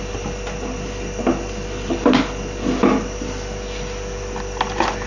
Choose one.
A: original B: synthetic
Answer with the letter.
A